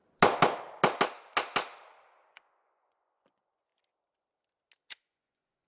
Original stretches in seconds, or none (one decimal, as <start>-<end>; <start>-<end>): 0.0-2.3; 3.7-5.0